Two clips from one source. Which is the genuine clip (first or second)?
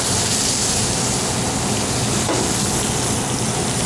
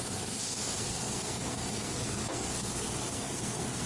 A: first